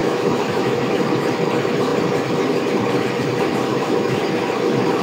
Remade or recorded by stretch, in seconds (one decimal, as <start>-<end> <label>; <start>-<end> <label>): 0.0-1.0 remade; 1.0-3.7 recorded; 3.7-4.2 remade; 4.2-5.0 recorded

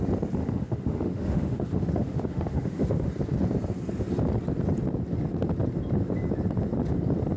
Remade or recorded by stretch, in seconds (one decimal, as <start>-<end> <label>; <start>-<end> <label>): 0.0-0.4 recorded; 0.4-3.1 remade; 3.1-7.4 recorded

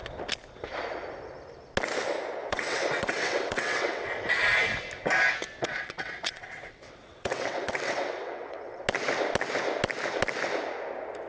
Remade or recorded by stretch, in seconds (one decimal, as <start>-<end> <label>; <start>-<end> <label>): 0.0-2.4 recorded; 2.4-4.1 remade; 4.1-5.6 recorded; 5.6-8.8 remade; 8.8-11.3 recorded

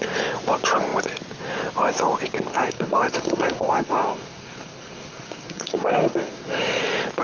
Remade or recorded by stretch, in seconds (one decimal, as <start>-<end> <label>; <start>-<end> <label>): 0.0-2.5 recorded; 2.5-6.8 remade; 6.8-7.2 recorded

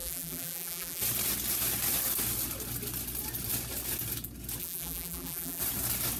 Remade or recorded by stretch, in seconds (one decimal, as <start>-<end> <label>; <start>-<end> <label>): 0.0-1.0 remade; 1.0-4.6 recorded; 4.6-5.6 remade; 5.6-6.2 recorded

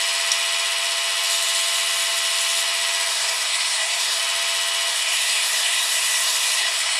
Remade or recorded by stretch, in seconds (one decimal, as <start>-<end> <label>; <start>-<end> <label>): 0.0-3.1 recorded; 3.1-4.2 remade; 4.2-4.9 recorded; 4.9-7.0 remade

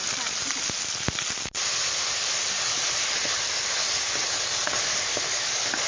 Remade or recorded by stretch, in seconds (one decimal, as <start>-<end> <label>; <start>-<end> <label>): 0.0-4.9 recorded; 4.9-5.9 remade

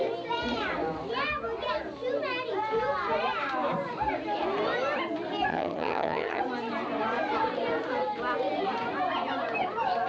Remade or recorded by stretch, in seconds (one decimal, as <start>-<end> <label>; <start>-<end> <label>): 0.0-5.5 recorded; 5.5-6.4 remade; 6.4-10.1 recorded